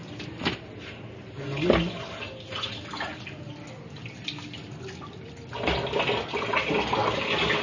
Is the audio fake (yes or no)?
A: no